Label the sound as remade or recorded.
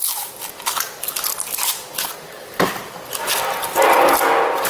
recorded